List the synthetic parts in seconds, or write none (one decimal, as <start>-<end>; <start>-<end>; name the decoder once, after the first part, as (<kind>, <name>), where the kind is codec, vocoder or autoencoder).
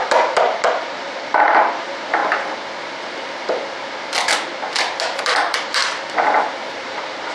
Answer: 0.0-2.2 (vocoder, BigVGAN v2); 5.2-5.8; 6.7-7.3